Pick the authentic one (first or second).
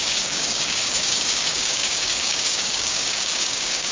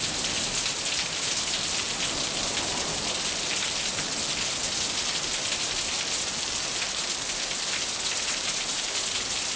second